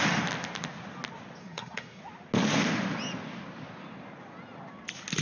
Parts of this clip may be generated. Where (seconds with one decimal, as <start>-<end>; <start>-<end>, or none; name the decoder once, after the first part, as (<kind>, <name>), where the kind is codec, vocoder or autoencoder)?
1.4-2.0 (codec, SNAC)